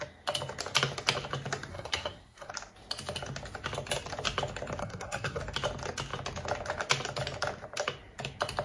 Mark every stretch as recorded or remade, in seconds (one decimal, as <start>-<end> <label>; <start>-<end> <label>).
0.0-1.7 recorded; 1.7-2.5 remade; 2.5-4.8 recorded; 4.8-5.4 remade; 5.4-8.6 recorded